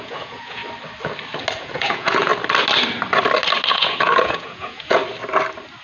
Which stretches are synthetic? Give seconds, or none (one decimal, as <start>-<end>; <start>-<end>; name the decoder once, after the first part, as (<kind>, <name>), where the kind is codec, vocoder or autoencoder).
0.0-0.6 (vocoder, Vocos); 1.6-2.3; 3.7-5.0